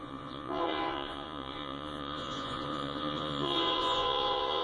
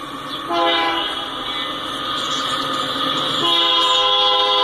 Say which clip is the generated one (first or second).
first